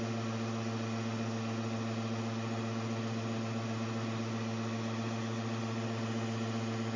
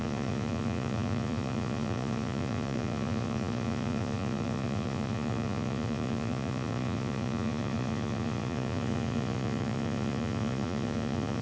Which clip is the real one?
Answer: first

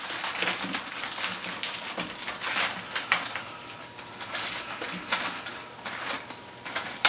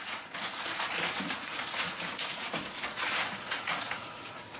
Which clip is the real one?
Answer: first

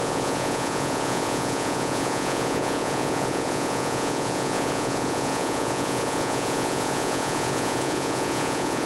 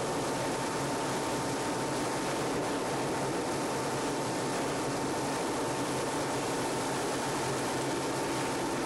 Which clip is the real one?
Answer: second